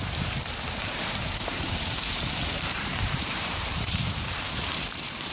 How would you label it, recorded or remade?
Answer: remade